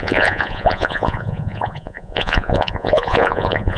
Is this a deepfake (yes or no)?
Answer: yes